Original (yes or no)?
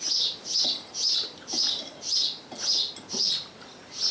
yes